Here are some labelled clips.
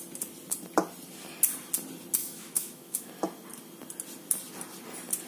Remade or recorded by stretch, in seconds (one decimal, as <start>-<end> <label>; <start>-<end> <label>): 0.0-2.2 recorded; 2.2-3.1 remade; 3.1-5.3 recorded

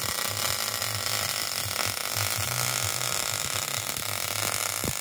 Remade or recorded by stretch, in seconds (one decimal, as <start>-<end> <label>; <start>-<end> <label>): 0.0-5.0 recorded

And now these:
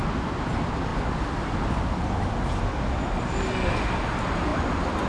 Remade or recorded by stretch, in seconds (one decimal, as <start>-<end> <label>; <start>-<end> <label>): 0.0-5.1 recorded

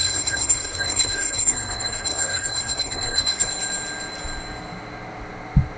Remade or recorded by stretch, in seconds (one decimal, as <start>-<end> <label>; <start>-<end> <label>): 0.0-3.5 remade; 3.5-5.8 recorded